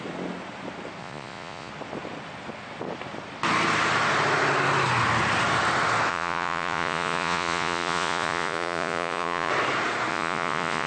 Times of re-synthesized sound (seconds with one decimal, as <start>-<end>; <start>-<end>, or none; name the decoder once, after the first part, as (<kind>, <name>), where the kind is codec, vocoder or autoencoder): 1.0-1.7 (vocoder, Vocos); 6.1-9.5; 10.1-10.9